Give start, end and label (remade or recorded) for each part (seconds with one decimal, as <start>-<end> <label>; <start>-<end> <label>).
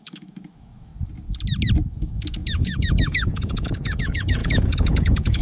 0.0-0.9 remade; 0.9-1.9 recorded; 1.9-5.4 remade